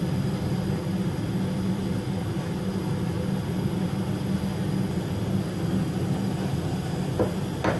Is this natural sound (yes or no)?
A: yes